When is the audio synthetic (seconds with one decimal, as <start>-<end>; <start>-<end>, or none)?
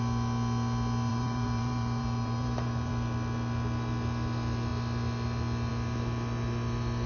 1.1-2.9